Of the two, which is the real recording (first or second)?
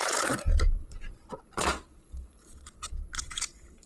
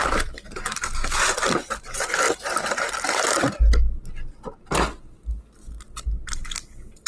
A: second